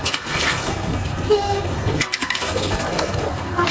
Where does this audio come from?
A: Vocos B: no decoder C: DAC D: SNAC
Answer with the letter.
D